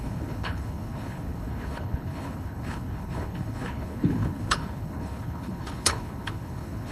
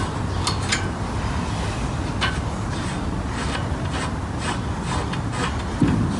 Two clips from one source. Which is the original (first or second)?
second